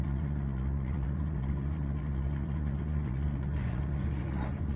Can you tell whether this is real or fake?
fake